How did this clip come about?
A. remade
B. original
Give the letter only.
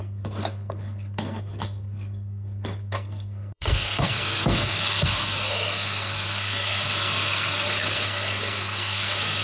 A